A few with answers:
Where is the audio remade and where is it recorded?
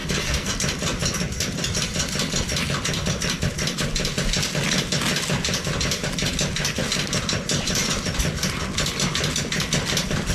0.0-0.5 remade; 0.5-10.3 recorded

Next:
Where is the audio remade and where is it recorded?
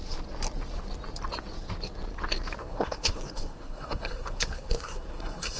0.0-2.6 recorded; 2.6-5.6 remade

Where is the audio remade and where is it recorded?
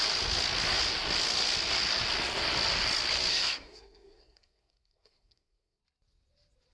0.0-3.3 recorded; 3.3-5.8 remade; 5.8-6.7 recorded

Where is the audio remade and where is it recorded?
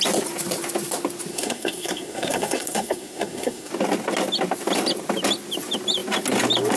0.0-1.3 recorded; 1.3-3.7 remade; 3.7-6.8 recorded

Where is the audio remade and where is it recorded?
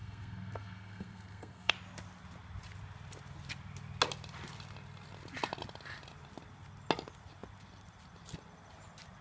0.0-1.7 remade; 1.7-9.2 recorded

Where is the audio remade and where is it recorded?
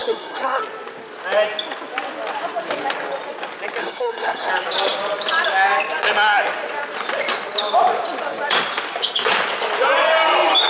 0.0-0.6 remade; 0.6-3.8 recorded; 3.8-4.5 remade; 4.5-10.7 recorded